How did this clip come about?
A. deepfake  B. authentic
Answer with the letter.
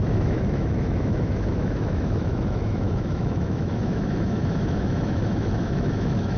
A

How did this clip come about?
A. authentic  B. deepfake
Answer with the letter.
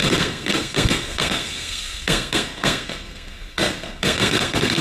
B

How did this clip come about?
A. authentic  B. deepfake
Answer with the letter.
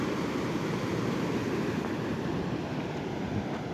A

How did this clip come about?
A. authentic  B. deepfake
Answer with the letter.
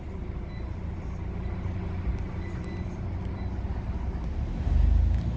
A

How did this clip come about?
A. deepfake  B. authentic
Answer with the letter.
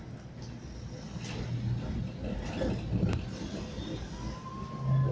B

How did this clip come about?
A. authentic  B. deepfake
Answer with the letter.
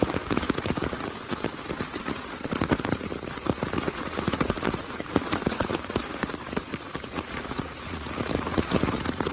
B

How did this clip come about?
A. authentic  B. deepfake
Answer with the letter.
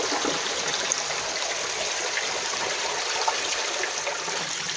A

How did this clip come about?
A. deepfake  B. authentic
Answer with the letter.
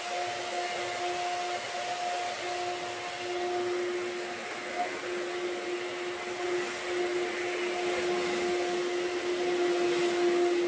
B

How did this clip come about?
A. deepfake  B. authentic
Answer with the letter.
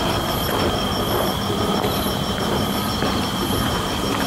A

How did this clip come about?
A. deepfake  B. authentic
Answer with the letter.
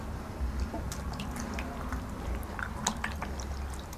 B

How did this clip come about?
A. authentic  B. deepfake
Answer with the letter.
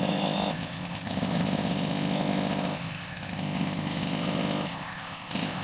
B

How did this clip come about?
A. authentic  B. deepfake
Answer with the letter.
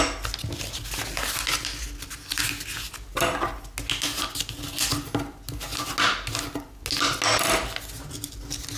A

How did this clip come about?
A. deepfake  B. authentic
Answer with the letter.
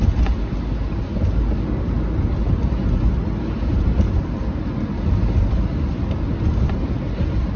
B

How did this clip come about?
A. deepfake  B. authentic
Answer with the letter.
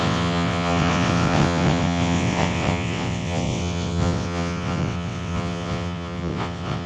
A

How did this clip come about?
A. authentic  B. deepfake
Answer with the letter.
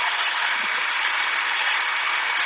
A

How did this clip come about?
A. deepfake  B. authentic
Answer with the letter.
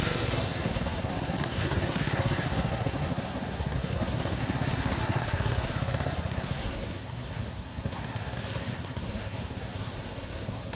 A